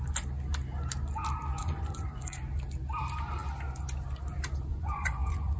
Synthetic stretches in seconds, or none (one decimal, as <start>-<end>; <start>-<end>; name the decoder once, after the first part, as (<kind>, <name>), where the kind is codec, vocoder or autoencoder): 1.6-2.4 (vocoder, Vocos); 4.7-5.6